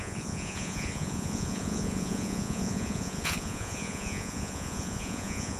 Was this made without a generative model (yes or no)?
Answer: no